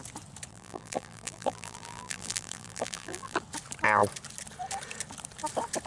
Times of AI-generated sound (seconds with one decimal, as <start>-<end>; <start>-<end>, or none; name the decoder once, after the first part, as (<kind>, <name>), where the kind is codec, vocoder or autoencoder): 0.5-3.4 (vocoder, BigVGAN v2)